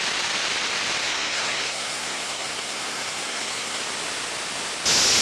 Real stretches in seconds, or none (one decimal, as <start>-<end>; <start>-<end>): 0.0-1.0; 3.8-5.2